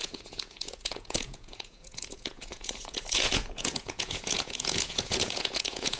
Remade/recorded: remade